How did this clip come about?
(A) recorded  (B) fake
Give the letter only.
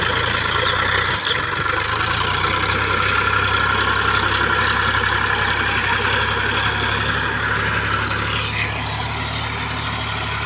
A